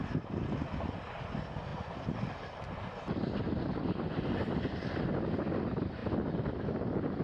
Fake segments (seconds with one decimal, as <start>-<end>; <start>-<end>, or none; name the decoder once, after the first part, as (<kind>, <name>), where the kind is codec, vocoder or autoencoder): none